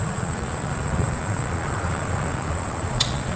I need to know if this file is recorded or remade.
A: remade